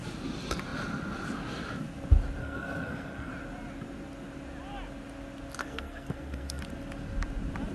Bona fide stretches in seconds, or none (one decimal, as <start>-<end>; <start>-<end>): 0.0-2.4; 3.3-5.6; 6.6-7.7